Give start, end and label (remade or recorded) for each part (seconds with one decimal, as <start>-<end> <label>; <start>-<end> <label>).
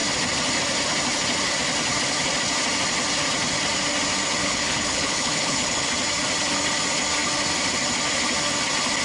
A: 0.0-4.4 recorded; 4.4-5.9 remade; 5.9-9.0 recorded